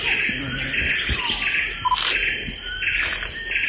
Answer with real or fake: real